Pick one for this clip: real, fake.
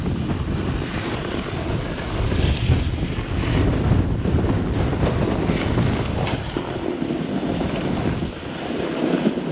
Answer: real